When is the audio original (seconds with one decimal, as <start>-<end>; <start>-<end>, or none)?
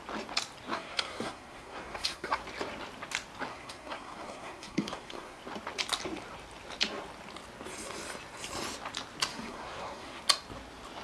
0.0-0.7; 2.4-3.5; 5.4-9.3; 10.2-11.0